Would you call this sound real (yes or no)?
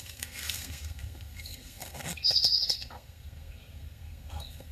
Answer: no